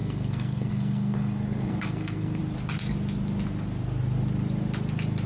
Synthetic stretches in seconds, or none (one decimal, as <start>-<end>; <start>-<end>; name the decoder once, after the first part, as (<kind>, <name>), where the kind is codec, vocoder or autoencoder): 0.0-2.4 (codec, SNAC)